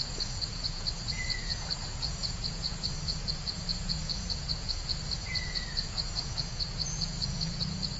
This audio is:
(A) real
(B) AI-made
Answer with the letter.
B